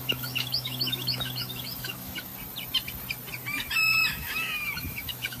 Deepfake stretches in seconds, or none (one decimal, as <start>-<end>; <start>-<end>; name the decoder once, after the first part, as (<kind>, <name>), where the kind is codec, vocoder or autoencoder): 0.0-2.3 (autoencoder, DAC-VAE); 4.1-5.4

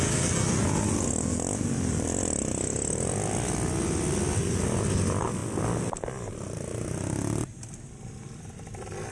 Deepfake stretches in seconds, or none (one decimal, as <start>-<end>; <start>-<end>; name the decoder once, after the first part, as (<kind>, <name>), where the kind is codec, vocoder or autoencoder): none

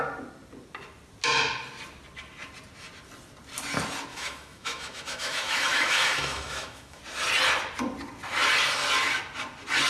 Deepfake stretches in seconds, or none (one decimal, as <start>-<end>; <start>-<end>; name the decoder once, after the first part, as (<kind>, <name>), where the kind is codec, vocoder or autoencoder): 4.1-7.0 (autoencoder, DAC-VAE)

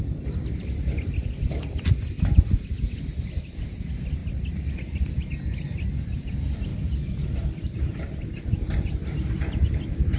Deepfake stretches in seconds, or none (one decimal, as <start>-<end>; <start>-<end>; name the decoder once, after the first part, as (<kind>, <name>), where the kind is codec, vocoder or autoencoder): none

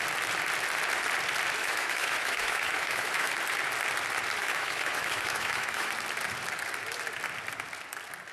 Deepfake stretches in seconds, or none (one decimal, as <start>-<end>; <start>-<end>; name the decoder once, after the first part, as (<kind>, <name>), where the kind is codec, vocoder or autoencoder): 1.6-3.3 (autoencoder, DAC-VAE); 4.4-5.9

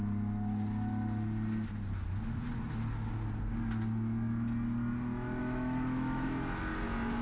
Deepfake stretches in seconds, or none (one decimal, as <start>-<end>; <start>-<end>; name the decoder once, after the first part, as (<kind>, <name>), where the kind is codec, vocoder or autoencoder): 5.4-6.3 (autoencoder, DAC-VAE)